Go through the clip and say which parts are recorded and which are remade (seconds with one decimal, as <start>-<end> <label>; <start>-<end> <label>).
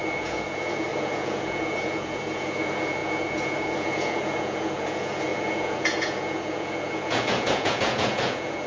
0.0-8.7 remade